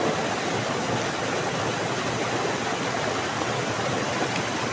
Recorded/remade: recorded